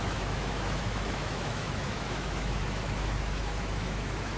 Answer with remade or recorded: remade